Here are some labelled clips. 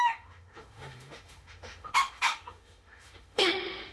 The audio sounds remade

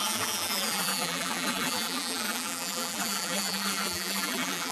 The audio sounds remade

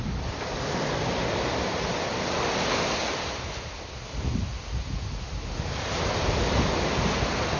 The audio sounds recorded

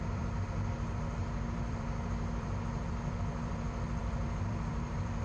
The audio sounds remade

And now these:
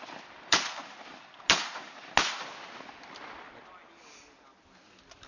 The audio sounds recorded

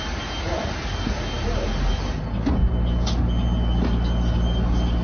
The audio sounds recorded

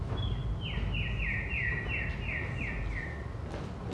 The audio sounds recorded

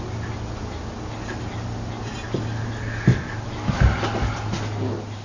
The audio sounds recorded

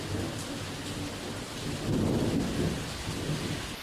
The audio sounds recorded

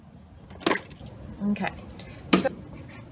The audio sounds recorded